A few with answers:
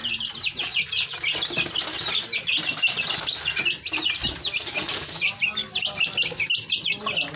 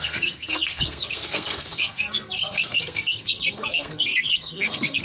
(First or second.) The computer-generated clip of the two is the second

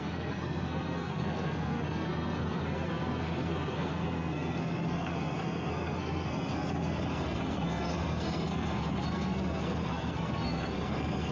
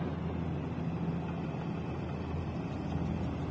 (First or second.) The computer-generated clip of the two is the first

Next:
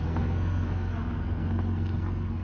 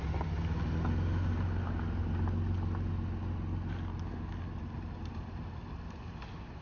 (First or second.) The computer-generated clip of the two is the first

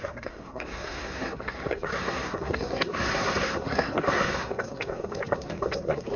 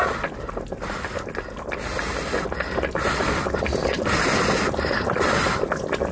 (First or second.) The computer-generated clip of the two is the first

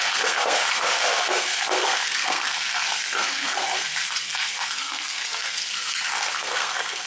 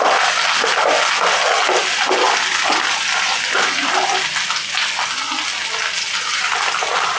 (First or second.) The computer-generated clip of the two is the first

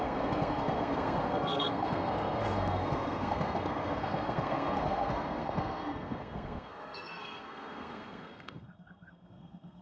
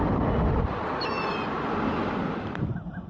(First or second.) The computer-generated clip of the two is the first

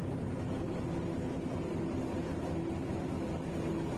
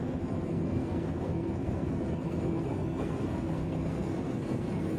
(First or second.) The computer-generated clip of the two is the second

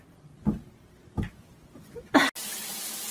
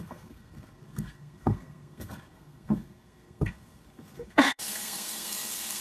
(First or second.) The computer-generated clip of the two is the second